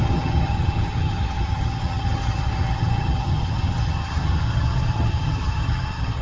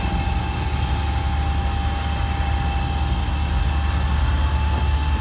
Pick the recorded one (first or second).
second